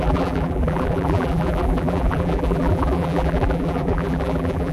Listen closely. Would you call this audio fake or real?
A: fake